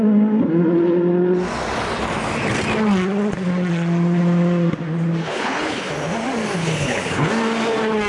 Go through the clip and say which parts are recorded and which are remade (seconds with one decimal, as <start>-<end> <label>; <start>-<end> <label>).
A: 0.0-5.2 recorded; 5.2-5.9 remade; 5.9-6.6 recorded; 6.6-7.3 remade; 7.3-8.1 recorded